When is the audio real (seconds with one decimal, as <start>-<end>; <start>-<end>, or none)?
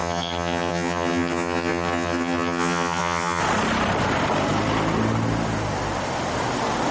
3.4-6.9